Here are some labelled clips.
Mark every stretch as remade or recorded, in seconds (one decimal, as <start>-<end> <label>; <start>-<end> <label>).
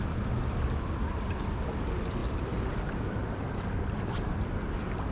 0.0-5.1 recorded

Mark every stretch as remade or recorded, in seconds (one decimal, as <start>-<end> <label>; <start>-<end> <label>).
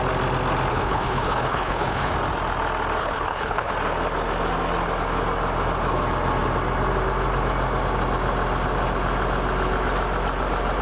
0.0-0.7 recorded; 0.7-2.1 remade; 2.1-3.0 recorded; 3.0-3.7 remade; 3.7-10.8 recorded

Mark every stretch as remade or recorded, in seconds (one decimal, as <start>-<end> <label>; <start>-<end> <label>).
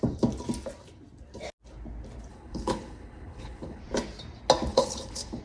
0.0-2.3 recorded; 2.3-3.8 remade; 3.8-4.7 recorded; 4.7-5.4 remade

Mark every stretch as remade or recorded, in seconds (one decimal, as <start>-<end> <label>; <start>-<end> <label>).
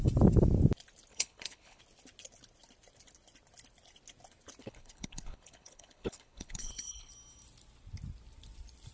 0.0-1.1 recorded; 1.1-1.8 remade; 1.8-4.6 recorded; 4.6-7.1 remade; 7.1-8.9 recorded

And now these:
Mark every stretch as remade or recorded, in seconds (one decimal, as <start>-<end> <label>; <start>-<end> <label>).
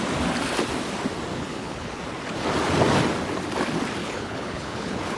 0.0-1.3 recorded; 1.3-2.0 remade; 2.0-4.0 recorded; 4.0-5.2 remade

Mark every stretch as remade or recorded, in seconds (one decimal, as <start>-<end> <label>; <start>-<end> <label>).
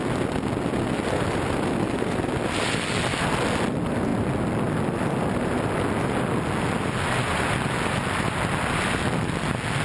0.0-9.8 recorded